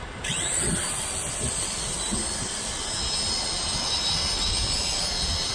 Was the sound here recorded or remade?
recorded